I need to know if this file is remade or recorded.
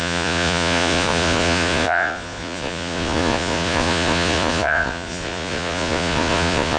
remade